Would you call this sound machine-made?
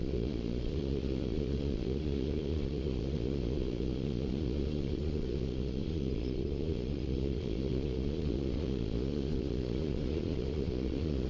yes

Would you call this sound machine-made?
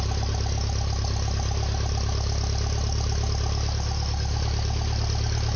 no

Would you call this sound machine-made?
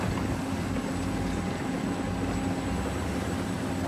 no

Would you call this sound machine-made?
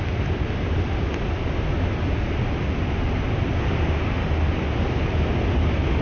no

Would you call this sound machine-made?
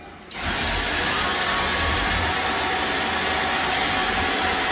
no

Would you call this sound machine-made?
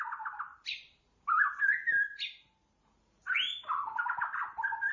no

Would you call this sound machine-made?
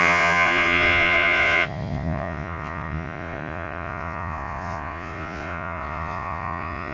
yes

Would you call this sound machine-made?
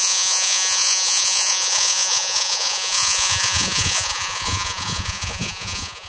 yes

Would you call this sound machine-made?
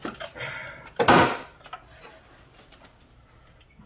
no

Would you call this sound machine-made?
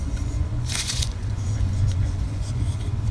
yes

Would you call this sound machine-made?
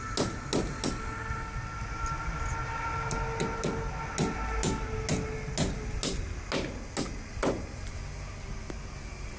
no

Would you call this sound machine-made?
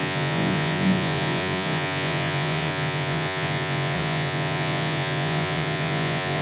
yes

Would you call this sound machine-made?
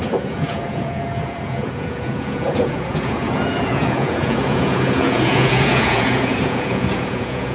yes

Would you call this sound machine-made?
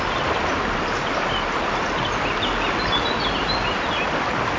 no